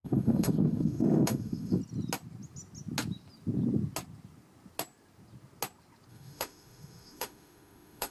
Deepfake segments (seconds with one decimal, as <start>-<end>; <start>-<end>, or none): 0.0-1.8; 6.1-8.1